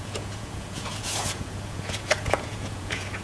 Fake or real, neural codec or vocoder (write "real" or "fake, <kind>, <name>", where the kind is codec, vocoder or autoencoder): fake, vocoder, Vocos